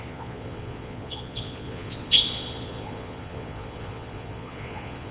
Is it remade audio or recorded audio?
remade